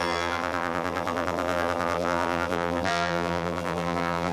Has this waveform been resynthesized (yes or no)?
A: yes